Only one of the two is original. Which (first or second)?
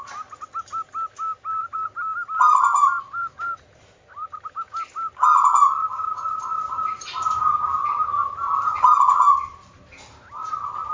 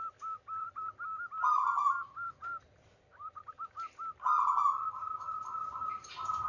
first